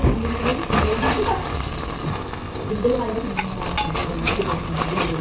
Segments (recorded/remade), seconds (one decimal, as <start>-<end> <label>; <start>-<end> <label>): 0.0-2.1 recorded; 2.1-2.7 remade; 2.7-5.2 recorded